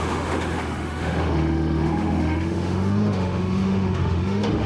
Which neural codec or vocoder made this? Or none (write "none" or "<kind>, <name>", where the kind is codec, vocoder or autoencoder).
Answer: autoencoder, DAC-VAE